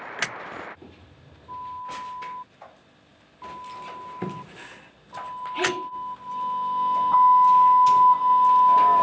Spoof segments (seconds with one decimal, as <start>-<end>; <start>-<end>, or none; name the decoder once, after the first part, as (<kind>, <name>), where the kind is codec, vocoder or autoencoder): none